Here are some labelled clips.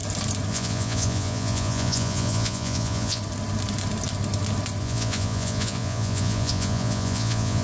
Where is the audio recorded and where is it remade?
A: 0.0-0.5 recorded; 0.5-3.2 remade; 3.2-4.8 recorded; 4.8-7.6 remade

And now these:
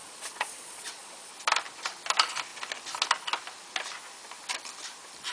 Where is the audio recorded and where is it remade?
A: 0.0-1.3 remade; 1.3-5.3 recorded

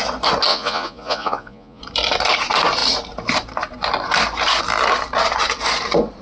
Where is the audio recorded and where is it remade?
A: 0.0-0.5 recorded; 0.5-1.8 remade; 1.8-6.2 recorded